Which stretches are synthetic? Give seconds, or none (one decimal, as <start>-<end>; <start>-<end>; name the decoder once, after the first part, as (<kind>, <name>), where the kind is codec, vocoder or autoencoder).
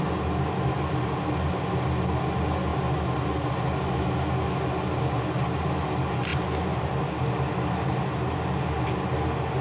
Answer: none